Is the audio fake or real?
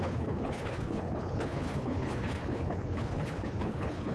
fake